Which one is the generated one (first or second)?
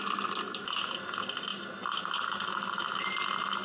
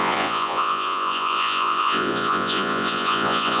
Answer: second